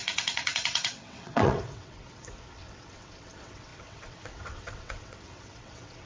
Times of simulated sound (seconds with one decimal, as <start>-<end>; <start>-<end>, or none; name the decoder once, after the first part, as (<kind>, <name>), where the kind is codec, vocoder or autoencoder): 0.0-6.1 (vocoder, WaveNeXt)